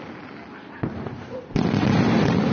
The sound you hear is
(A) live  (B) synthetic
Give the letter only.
A